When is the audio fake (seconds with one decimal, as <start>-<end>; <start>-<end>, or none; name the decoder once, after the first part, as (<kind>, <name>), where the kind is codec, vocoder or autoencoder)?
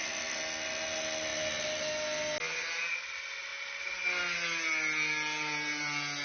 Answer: none